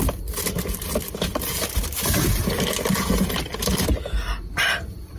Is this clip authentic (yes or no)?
yes